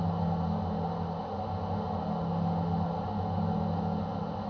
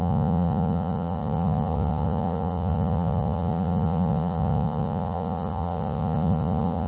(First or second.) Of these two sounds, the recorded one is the first